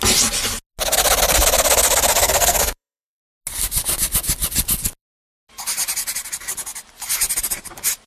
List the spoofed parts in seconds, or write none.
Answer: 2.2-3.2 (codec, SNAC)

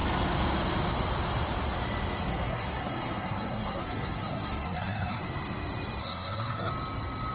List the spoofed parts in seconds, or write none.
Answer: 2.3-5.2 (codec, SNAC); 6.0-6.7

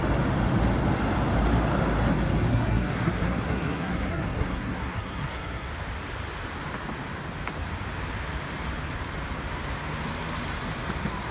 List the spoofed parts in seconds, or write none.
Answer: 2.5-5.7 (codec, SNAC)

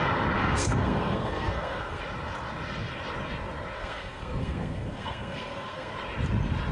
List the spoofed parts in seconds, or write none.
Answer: 0.4-2.0 (codec, SNAC); 3.8-5.9

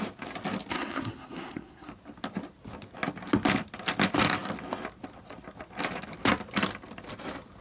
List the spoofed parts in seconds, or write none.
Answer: 0.7-1.9 (codec, SNAC)

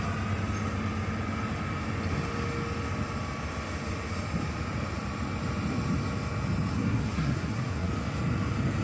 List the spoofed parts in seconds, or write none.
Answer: 6.7-7.9 (codec, SNAC)

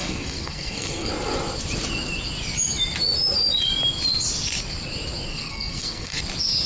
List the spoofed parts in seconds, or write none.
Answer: 0.0-1.1 (codec, SNAC); 5.3-6.2

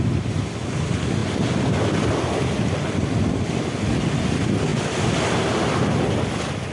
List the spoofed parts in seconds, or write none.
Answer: none